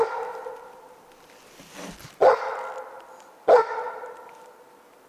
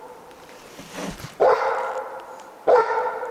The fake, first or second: second